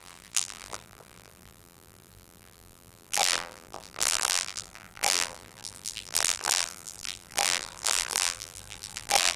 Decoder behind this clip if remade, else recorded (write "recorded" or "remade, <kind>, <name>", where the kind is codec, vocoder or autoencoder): remade, vocoder, BigVGAN v2